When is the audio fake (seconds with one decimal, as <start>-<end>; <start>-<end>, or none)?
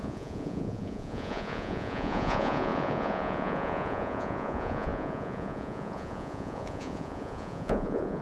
0.0-8.2